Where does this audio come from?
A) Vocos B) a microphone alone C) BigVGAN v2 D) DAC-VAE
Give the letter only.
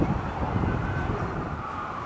C